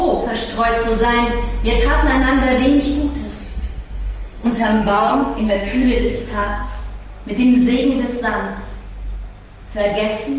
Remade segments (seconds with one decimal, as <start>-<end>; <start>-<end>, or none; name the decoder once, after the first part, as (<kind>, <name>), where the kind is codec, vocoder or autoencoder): 3.4-6.8 (codec, SNAC)